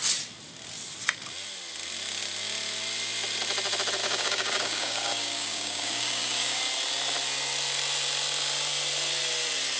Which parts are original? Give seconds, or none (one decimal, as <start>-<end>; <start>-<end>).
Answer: 0.0-4.0; 6.6-9.8